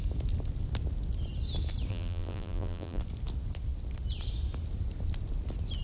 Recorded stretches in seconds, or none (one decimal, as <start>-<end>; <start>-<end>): 0.0-1.9; 3.0-5.8